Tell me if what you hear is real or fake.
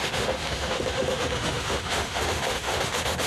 fake